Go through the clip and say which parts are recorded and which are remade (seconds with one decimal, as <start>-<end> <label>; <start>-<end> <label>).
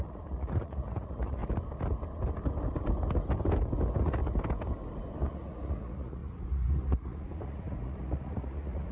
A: 0.0-1.4 remade; 1.4-5.2 recorded; 5.2-8.9 remade